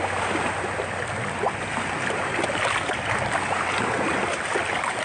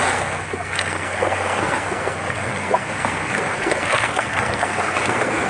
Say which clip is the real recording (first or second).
first